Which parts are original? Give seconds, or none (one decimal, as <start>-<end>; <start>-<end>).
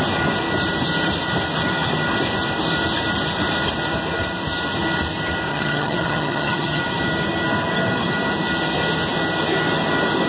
0.0-5.5; 6.8-10.3